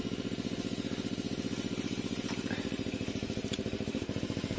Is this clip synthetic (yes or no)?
yes